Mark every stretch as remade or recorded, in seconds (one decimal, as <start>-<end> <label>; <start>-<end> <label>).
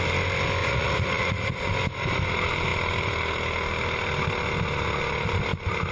0.0-0.6 recorded; 0.6-1.7 remade; 1.7-5.9 recorded